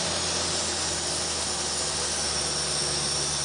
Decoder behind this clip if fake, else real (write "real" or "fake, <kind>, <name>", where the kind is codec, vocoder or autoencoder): real